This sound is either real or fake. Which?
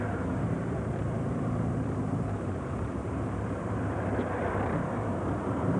fake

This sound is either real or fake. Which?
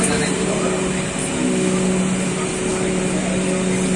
real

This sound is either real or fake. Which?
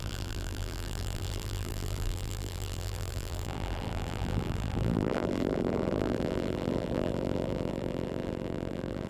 fake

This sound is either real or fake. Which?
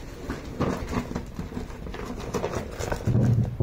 real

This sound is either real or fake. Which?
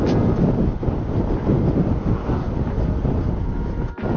real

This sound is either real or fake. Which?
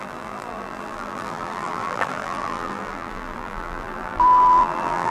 fake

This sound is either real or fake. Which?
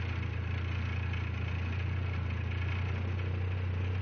real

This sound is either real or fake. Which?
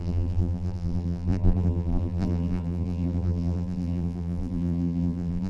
fake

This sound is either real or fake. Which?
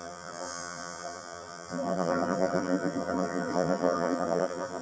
fake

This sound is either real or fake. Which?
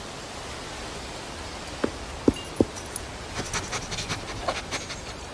real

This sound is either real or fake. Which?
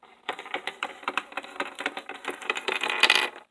fake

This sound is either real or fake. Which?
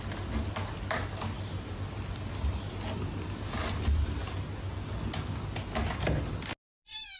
real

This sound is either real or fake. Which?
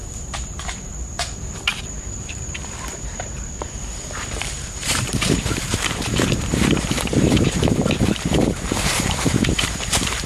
fake